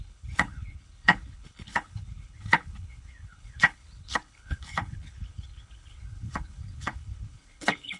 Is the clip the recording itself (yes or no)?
no